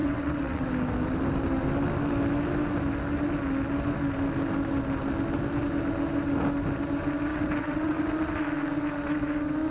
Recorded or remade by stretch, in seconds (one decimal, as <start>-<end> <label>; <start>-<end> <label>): 0.0-0.7 remade; 0.7-7.3 recorded; 7.3-8.0 remade; 8.0-9.7 recorded